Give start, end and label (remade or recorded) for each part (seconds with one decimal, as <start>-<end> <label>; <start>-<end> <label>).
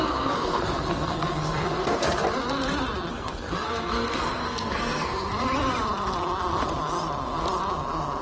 0.0-2.2 remade; 2.2-3.1 recorded; 3.1-5.3 remade; 5.3-8.2 recorded